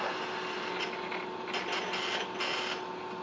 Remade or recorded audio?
recorded